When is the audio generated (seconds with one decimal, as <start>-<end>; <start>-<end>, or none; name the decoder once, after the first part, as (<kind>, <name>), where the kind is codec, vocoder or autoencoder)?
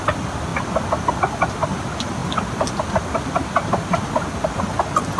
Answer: none